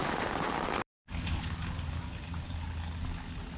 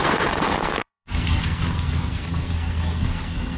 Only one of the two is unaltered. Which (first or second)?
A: first